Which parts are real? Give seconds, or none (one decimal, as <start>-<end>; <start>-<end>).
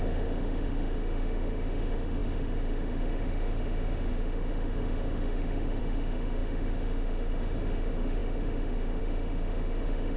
none